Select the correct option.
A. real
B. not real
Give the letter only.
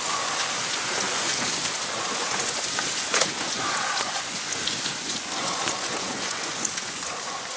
B